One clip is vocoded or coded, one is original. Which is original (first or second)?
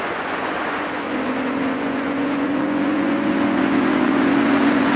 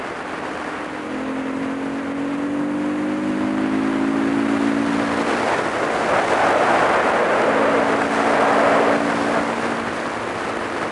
second